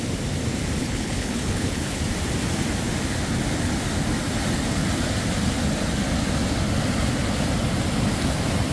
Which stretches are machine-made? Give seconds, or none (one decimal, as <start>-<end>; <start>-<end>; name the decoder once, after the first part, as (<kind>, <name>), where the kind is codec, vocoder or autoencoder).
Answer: 0.8-2.0 (codec, HILCodec)

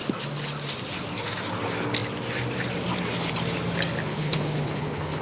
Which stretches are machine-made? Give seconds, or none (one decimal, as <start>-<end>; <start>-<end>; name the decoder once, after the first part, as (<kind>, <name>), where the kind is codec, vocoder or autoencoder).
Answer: 4.1-5.2 (codec, HILCodec)

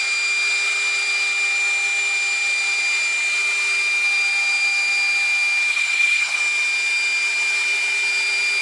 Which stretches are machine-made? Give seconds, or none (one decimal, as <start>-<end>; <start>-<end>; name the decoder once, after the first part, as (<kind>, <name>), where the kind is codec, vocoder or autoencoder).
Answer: 5.7-6.4 (codec, HILCodec)